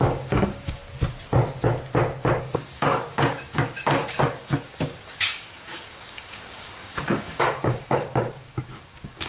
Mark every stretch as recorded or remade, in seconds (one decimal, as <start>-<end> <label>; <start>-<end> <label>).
0.0-0.8 remade; 0.8-2.4 recorded; 2.4-9.3 remade